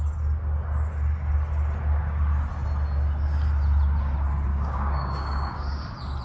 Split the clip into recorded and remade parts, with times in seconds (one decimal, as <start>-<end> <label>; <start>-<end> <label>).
0.0-4.5 recorded; 4.5-5.8 remade; 5.8-6.2 recorded